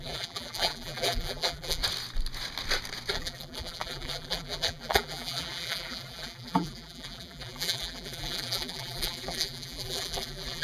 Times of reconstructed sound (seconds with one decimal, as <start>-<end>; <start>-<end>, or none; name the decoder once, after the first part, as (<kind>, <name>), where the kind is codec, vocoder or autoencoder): 0.0-1.8 (vocoder, BigVGAN v2); 3.1-10.6